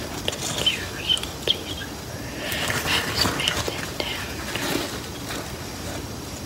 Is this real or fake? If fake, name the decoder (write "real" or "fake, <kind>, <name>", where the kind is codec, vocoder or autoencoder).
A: real